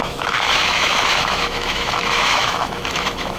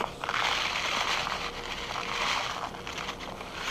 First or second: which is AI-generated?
first